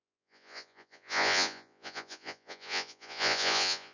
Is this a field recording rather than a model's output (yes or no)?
no